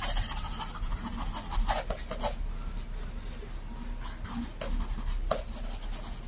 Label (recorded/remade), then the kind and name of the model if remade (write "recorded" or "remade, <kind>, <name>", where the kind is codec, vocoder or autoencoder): recorded